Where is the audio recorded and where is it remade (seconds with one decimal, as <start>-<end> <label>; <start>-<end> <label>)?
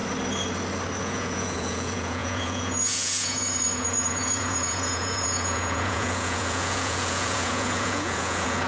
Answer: 0.0-1.0 recorded; 1.0-8.7 remade